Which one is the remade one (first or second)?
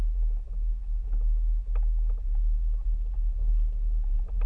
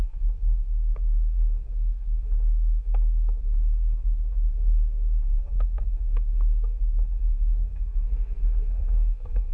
second